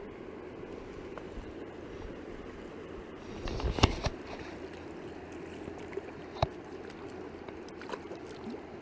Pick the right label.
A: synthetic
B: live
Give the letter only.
B